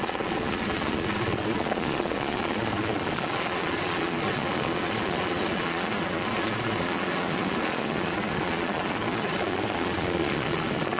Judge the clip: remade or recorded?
remade